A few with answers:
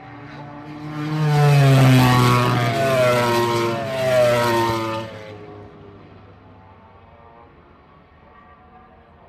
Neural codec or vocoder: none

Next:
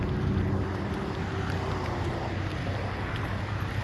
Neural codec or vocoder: none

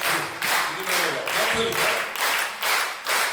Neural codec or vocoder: none